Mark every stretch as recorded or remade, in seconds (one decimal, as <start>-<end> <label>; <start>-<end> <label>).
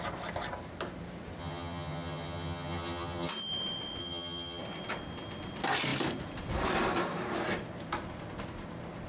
0.0-1.4 recorded; 1.4-3.3 remade; 3.3-4.0 recorded; 4.0-4.6 remade; 4.6-9.1 recorded